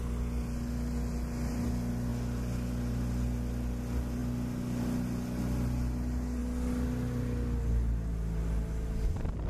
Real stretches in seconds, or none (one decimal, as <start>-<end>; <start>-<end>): 0.0-9.5